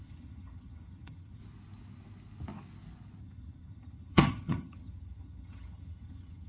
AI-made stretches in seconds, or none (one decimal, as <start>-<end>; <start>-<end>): 0.0-1.4; 3.2-6.5